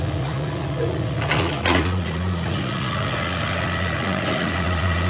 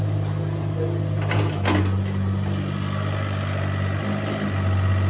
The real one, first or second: second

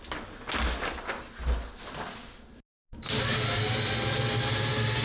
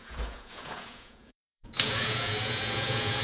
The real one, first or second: first